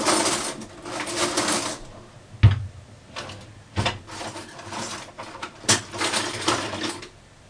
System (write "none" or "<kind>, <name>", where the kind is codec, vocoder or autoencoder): none